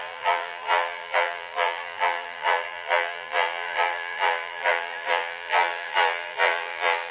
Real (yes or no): no